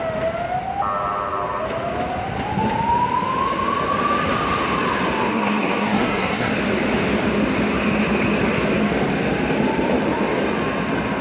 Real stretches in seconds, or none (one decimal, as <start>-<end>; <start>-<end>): 0.0-5.3; 6.5-11.2

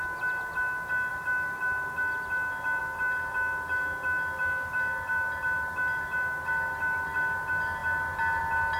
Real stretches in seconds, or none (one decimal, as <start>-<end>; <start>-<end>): 0.0-8.8

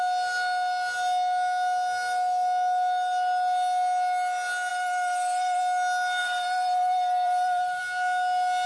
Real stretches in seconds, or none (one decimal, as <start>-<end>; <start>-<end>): 0.0-4.7; 5.6-6.2; 7.8-8.7